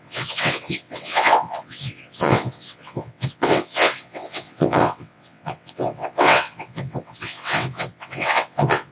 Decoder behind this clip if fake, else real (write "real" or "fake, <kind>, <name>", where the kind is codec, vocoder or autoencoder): fake, vocoder, WaveNeXt